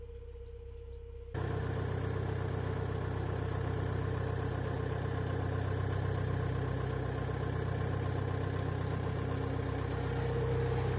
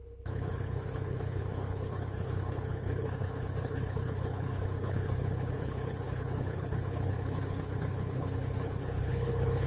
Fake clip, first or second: second